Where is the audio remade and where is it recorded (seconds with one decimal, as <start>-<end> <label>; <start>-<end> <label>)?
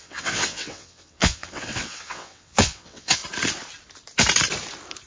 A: 0.0-3.2 remade; 3.2-5.1 recorded